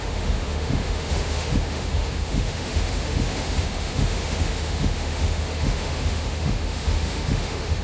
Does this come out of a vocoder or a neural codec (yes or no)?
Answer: yes